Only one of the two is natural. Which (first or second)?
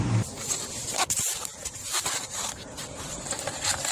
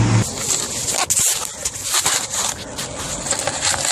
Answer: second